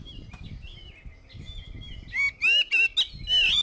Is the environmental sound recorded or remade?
recorded